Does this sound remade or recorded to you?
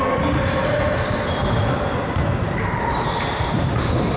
remade